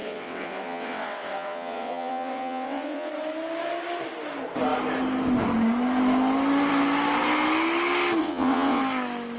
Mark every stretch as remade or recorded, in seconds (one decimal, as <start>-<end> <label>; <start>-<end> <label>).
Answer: 0.0-3.1 remade; 3.1-8.2 recorded; 8.2-8.8 remade; 8.8-9.4 recorded